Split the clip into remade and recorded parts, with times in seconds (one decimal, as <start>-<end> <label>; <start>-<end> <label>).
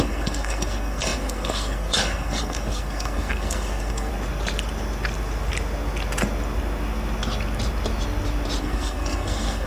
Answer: 0.0-4.1 remade; 4.1-8.6 recorded; 8.6-9.7 remade